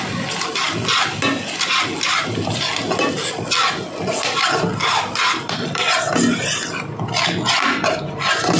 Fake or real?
real